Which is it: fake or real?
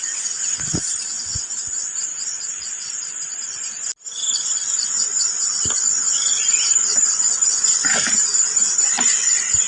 real